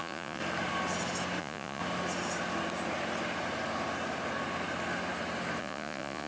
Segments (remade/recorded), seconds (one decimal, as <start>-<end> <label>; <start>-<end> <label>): 0.0-0.4 remade; 0.4-1.4 recorded; 1.4-1.8 remade; 1.8-5.6 recorded; 5.6-6.3 remade